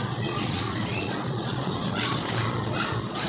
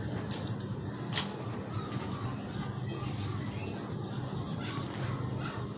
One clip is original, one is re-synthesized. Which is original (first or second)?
second